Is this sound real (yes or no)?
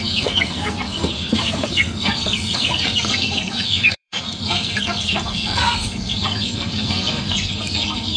no